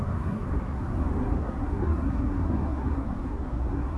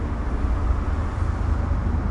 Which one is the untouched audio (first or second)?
second